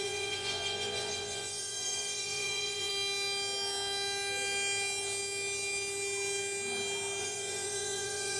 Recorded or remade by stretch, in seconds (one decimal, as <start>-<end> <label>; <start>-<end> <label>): 0.0-2.9 remade; 2.9-7.2 recorded; 7.2-8.4 remade